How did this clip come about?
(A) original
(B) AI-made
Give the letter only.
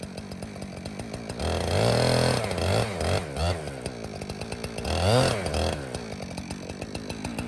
A